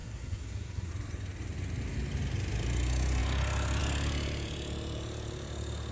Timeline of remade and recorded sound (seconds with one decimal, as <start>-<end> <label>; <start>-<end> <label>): 0.0-0.9 remade; 0.9-5.9 recorded